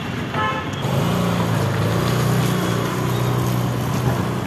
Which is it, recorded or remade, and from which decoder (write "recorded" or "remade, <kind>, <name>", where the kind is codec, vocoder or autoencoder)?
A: recorded